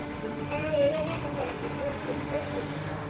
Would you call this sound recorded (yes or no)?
no